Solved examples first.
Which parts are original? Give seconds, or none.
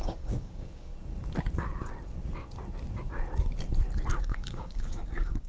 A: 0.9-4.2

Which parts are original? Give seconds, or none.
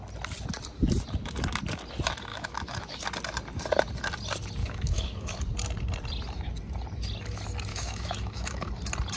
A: 0.0-2.3; 3.0-4.6; 5.4-7.7; 8.7-9.2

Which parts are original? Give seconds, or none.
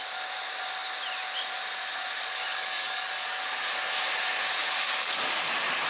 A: 0.0-2.5; 3.4-4.6; 5.5-5.9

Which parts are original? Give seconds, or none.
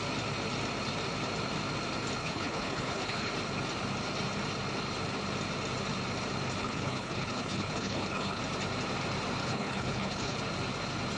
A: 0.0-2.2; 3.3-6.6; 8.4-9.4; 10.4-11.2